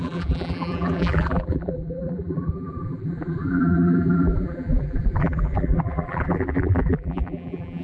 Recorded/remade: remade